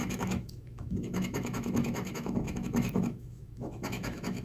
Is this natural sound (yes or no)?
no